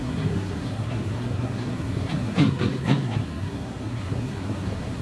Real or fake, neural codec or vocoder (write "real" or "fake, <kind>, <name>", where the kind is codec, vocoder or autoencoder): fake, codec, SNAC